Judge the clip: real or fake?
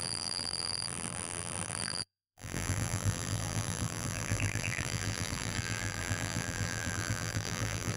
fake